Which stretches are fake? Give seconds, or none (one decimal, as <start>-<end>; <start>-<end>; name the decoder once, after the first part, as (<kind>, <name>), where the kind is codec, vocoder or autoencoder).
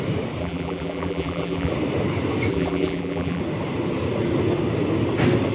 0.4-1.7 (vocoder, BigVGAN v2); 2.5-3.4